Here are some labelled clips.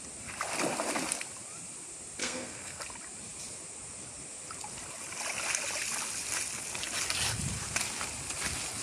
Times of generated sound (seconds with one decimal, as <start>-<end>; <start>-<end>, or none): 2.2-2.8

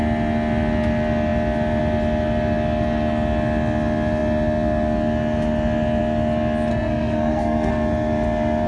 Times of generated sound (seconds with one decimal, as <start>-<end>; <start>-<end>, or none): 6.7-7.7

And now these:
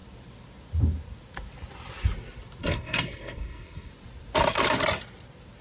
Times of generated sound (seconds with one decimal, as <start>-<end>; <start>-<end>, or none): 2.6-3.9